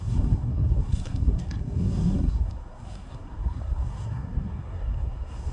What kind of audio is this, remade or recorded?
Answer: remade